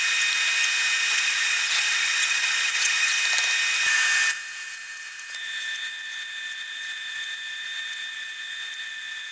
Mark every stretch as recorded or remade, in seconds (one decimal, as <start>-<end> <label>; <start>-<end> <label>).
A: 0.0-1.1 recorded; 1.1-3.1 remade; 3.1-9.3 recorded